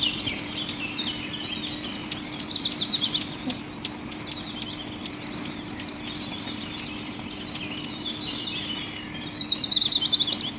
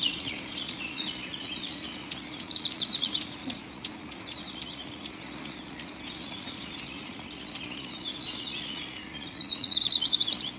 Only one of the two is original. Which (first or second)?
first